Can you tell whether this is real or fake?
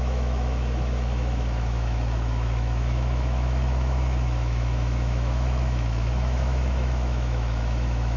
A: fake